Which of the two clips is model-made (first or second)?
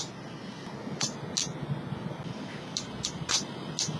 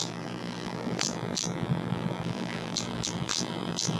second